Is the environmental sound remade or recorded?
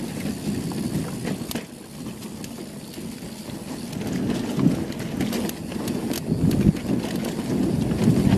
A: recorded